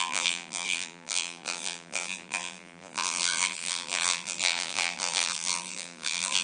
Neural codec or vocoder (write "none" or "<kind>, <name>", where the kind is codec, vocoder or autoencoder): vocoder, BigVGAN v2